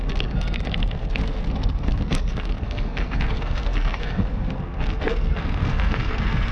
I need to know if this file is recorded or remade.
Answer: remade